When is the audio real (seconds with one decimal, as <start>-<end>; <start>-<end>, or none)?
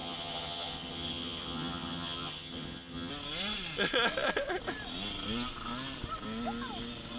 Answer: 3.1-7.2